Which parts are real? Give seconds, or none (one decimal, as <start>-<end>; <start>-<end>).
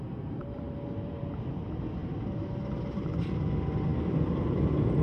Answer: 0.0-0.4; 1.4-3.9